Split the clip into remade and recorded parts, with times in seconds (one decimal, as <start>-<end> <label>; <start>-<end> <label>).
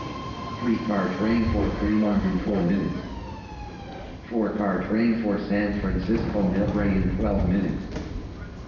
0.0-1.6 recorded; 1.6-2.7 remade; 2.7-8.7 recorded